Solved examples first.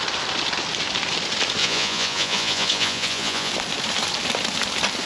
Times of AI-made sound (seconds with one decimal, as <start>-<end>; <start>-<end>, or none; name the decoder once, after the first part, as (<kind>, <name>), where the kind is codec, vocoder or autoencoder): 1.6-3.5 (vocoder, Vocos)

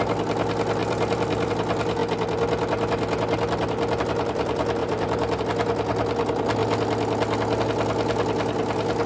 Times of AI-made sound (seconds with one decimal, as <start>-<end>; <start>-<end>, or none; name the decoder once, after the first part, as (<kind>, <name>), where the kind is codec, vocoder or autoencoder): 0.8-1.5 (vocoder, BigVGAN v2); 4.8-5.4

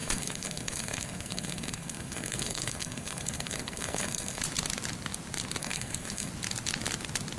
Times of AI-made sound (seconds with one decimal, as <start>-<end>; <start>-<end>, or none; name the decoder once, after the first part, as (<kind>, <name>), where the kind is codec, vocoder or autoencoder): 0.0-4.4 (codec, SNAC); 5.6-6.3